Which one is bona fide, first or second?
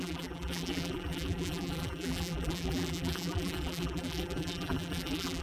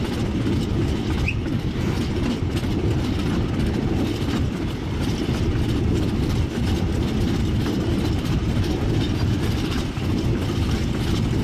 second